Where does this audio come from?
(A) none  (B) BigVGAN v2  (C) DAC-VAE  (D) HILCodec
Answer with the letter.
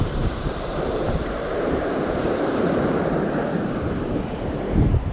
B